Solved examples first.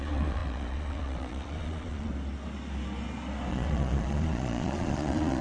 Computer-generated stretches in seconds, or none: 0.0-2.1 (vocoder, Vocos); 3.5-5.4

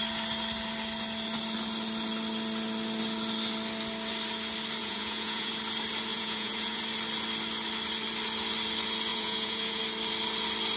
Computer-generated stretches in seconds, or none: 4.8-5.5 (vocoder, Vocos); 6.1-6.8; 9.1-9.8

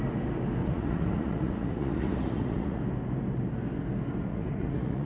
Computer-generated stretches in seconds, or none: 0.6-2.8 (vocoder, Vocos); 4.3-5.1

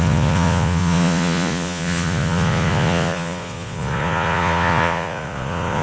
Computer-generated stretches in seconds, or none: 0.0-5.8 (vocoder, Vocos)